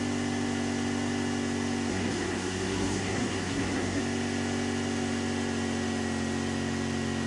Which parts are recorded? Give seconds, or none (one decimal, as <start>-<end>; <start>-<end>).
0.0-1.9; 4.0-7.3